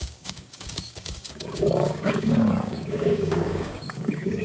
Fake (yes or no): yes